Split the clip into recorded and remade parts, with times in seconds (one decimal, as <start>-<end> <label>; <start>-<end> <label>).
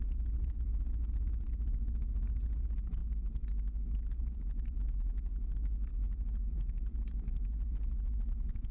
0.0-3.0 remade; 3.0-4.1 recorded; 4.1-5.3 remade; 5.3-5.9 recorded; 5.9-8.7 remade